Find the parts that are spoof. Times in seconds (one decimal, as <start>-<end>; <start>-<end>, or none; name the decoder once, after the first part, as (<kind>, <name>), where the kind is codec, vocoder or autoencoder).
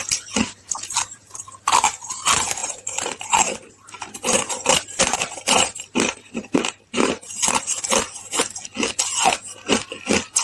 0.0-8.4 (vocoder, BigVGAN v2)